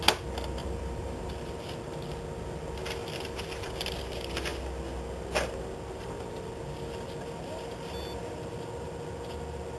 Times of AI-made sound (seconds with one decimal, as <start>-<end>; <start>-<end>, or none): 0.6-1.3; 3.0-3.9